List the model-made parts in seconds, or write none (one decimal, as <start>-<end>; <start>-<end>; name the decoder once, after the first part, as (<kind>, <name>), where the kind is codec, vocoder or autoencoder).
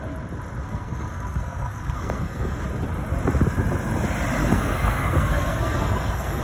0.6-2.6 (codec, SNAC); 4.4-6.4